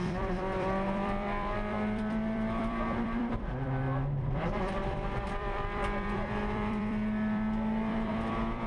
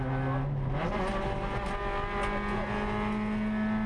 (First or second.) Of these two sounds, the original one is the second